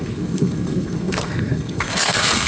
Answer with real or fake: fake